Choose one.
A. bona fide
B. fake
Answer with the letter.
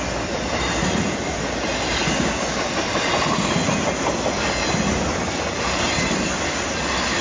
A